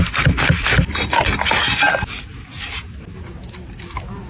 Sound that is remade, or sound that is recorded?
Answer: recorded